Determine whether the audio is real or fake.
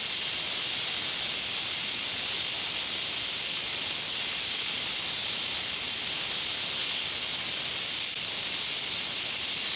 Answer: real